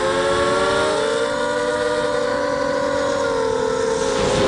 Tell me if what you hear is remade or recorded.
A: recorded